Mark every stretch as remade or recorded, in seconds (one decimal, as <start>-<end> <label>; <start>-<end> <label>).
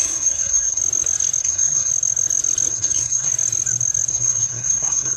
0.0-0.8 remade; 0.8-1.4 recorded; 1.4-1.9 remade; 1.9-2.7 recorded; 2.7-3.3 remade; 3.3-4.1 recorded; 4.1-5.2 remade